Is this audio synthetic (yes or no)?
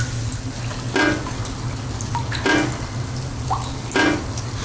no